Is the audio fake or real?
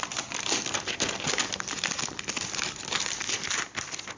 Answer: real